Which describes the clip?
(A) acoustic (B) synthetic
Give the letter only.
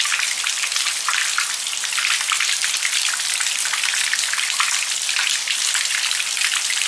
A